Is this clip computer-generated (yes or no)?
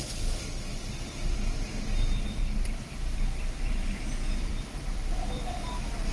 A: yes